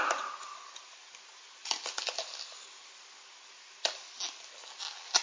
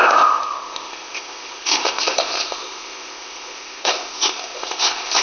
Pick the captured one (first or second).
first